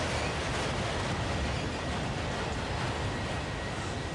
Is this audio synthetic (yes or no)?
yes